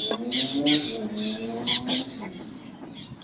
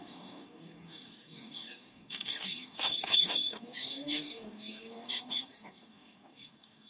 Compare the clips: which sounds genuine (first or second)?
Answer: first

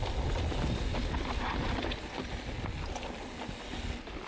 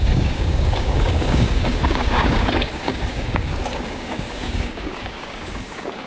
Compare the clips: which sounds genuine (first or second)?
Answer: first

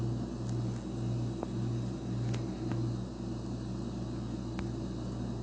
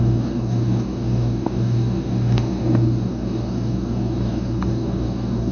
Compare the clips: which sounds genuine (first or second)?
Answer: first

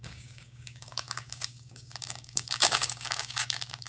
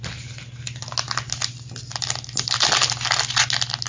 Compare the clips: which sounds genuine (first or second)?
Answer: second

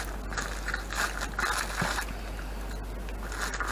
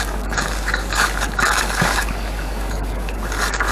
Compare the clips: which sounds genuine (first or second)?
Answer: first